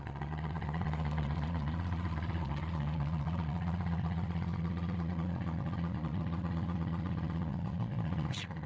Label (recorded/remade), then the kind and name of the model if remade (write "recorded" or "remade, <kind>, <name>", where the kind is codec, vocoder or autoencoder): remade, vocoder, Vocos